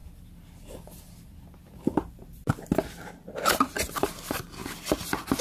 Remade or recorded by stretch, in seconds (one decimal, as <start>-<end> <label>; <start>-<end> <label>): 0.0-5.4 recorded